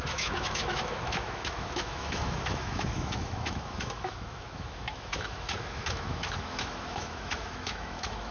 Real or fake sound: fake